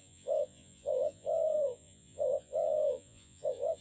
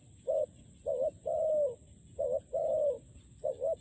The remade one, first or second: first